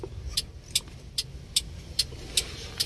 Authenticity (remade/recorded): recorded